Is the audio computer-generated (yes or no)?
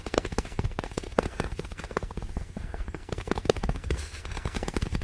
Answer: yes